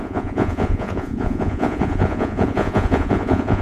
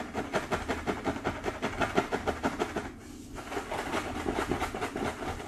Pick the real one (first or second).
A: second